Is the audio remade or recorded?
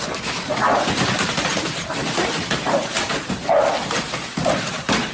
remade